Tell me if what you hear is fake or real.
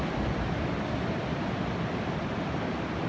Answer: real